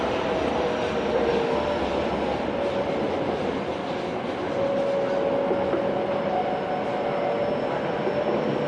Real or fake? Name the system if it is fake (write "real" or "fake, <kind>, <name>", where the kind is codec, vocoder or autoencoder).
real